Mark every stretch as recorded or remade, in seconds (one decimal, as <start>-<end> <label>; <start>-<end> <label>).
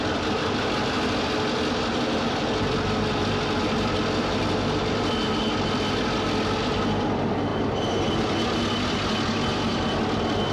0.0-10.5 recorded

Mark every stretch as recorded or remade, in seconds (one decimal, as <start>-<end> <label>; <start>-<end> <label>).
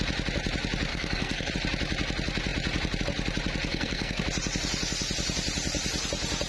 0.0-0.9 recorded; 0.9-1.5 remade; 1.5-3.7 recorded; 3.7-4.2 remade; 4.2-6.5 recorded